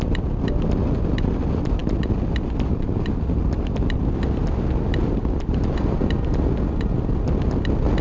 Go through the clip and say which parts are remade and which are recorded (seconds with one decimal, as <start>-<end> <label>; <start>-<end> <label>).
0.0-8.0 recorded